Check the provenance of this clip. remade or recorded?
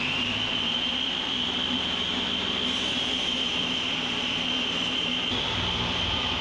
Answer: remade